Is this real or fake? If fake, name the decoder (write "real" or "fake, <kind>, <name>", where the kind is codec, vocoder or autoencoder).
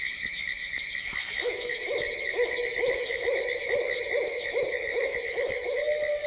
fake, autoencoder, DAC-VAE